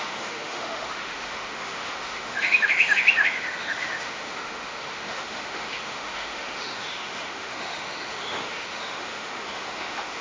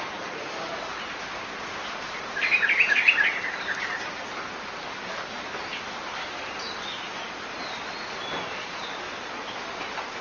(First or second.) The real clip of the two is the second